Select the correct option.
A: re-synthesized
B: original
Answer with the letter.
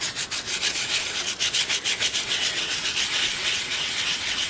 A